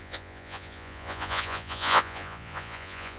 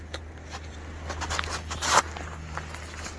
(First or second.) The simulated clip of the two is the first